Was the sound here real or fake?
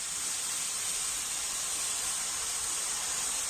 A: real